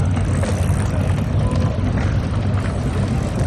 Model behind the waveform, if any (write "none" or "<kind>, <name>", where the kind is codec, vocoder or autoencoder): none